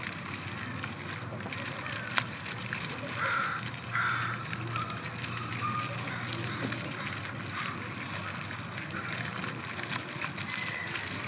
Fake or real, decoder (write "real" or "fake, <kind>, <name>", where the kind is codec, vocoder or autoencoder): real